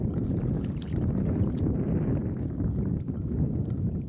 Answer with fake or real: fake